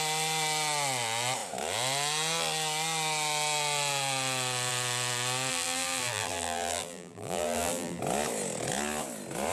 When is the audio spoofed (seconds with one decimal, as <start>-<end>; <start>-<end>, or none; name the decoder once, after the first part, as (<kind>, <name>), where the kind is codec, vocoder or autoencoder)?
5.5-8.0 (vocoder, BigVGAN v2)